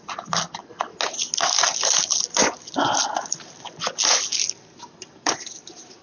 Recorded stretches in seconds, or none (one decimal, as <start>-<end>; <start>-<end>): 0.0-2.4; 3.1-6.0